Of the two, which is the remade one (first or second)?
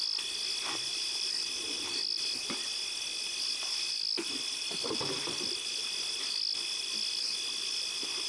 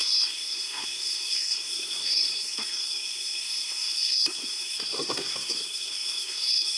second